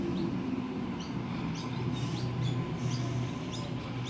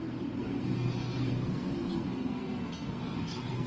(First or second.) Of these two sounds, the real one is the first